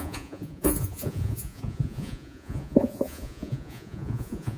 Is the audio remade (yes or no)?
yes